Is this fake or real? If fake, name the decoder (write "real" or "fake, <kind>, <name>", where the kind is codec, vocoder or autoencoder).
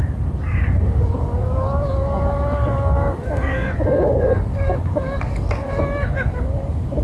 fake, codec, DAC